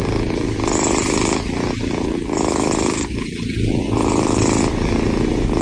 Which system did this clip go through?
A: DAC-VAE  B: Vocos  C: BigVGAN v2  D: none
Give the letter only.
C